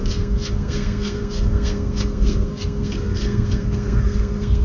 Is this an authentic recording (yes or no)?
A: no